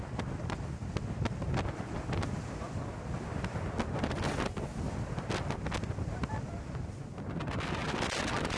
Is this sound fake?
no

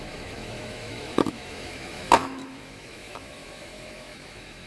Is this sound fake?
yes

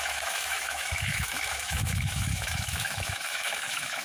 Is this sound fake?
yes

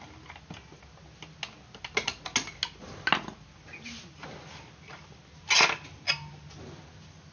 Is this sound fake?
no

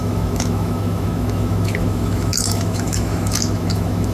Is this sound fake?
yes